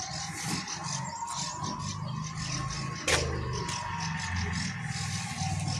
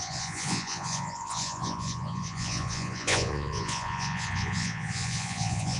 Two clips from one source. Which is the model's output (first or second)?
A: second